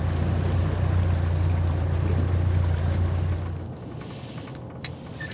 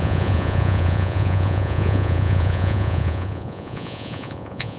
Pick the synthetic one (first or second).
second